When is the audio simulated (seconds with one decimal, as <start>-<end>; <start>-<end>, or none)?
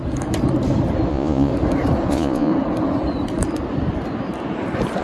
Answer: 1.1-1.5; 2.1-2.5